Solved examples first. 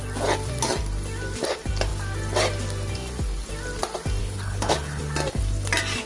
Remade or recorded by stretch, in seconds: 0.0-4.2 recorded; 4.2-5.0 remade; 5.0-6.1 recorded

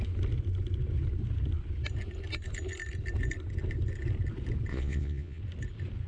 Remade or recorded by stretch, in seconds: 0.0-4.7 recorded; 4.7-5.4 remade; 5.4-6.1 recorded

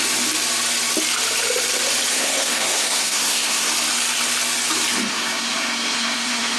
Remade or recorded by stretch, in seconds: 0.0-2.1 recorded; 2.1-3.7 remade; 3.7-5.1 recorded; 5.1-6.6 remade

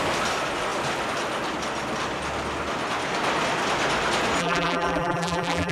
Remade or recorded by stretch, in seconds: 0.0-4.4 recorded; 4.4-5.7 remade

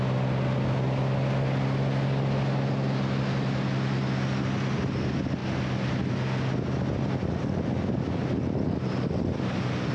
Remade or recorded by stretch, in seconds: 0.0-9.9 recorded